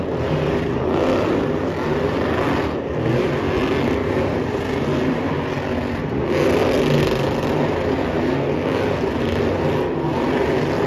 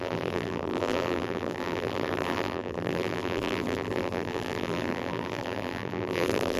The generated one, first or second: second